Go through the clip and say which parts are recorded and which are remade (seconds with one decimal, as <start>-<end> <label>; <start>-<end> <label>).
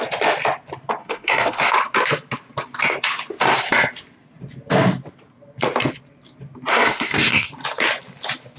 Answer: 0.0-1.0 recorded; 1.0-1.7 remade; 1.7-6.7 recorded; 6.7-7.5 remade; 7.5-8.6 recorded